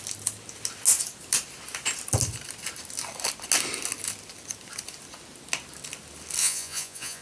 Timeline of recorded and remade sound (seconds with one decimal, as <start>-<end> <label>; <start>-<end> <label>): 0.0-6.4 recorded; 6.4-7.2 remade